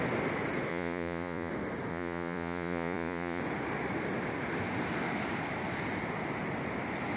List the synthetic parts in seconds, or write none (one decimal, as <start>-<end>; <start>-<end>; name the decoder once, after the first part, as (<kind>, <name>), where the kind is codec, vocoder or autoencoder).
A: 0.7-1.5 (vocoder, Vocos); 1.9-3.4